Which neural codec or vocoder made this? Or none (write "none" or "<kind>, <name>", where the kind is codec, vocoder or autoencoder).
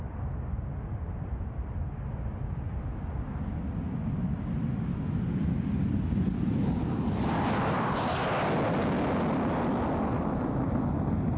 none